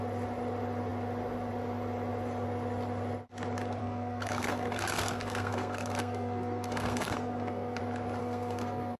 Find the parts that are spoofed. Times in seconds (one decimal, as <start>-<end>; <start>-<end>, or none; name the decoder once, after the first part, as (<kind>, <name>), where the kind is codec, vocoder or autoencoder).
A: 3.8-7.8 (codec, SNAC); 8.2-9.0